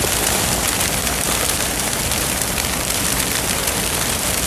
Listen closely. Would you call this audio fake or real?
fake